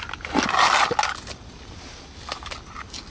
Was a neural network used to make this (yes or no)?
no